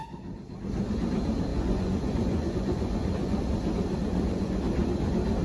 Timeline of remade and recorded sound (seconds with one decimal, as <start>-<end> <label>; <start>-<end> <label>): 0.0-1.5 recorded; 1.5-3.4 remade; 3.4-4.0 recorded; 4.0-4.6 remade; 4.6-5.4 recorded